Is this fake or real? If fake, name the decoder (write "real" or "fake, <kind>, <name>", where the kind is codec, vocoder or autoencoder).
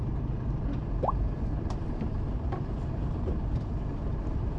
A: fake, vocoder, BigVGAN v2